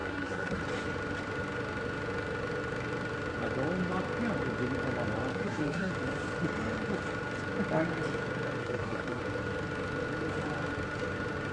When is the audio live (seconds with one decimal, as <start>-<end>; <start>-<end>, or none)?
0.6-5.3; 5.9-8.6; 9.2-11.5